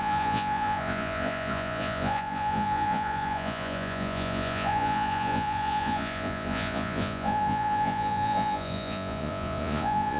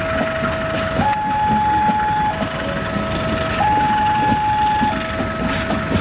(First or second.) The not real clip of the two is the first